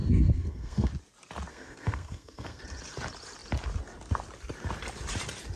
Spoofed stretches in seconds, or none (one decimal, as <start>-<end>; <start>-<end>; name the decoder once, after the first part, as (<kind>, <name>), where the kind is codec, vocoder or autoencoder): 0.0-0.9 (codec, SNAC); 1.5-2.6